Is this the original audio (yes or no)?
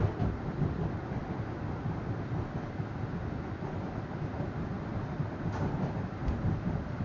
yes